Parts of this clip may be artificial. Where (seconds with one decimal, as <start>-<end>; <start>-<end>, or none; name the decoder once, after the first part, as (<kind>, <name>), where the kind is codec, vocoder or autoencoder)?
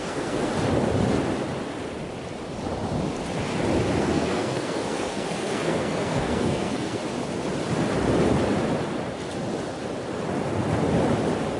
0.0-0.5 (codec, SNAC); 4.0-7.0